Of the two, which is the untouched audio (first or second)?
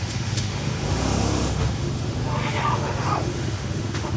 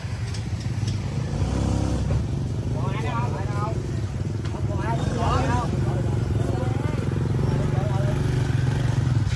second